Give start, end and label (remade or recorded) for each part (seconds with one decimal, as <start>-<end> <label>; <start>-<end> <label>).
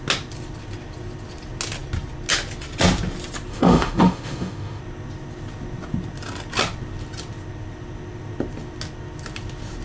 0.0-3.5 recorded; 3.5-4.8 remade; 4.8-9.8 recorded